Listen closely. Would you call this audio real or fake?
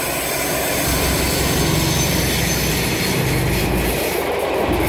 real